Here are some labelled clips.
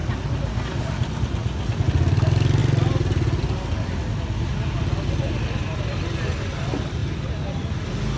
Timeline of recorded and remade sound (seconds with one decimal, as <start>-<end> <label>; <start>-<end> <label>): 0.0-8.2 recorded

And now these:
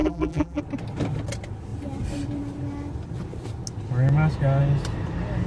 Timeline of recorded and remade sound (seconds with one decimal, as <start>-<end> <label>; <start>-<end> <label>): 0.0-0.6 remade; 0.6-5.5 recorded

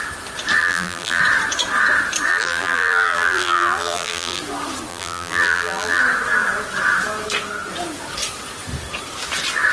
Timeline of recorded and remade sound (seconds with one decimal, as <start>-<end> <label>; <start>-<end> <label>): 0.0-0.6 recorded; 0.6-1.2 remade; 1.2-2.3 recorded; 2.3-4.4 remade; 4.4-4.9 recorded; 4.9-6.0 remade; 6.0-9.7 recorded